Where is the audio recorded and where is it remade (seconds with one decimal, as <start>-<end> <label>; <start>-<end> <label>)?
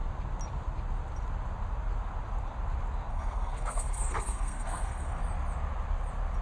0.0-3.1 recorded; 3.1-5.2 remade; 5.2-6.4 recorded